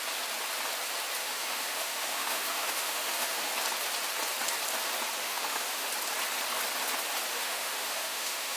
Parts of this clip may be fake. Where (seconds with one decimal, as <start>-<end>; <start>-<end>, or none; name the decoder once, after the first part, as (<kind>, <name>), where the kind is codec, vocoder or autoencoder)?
1.2-3.5 (autoencoder, DAC-VAE); 5.2-5.9; 7.3-8.6